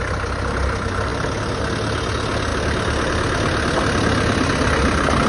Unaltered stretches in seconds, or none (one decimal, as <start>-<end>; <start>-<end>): 0.0-5.3